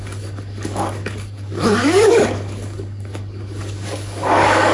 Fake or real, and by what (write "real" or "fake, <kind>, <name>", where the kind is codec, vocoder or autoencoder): fake, codec, DAC